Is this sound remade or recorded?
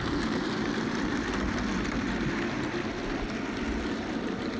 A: recorded